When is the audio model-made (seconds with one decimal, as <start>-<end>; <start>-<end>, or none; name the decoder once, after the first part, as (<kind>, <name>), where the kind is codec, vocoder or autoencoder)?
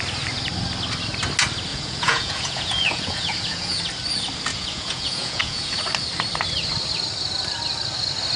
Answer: 1.7-3.8 (vocoder, Vocos); 4.5-5.8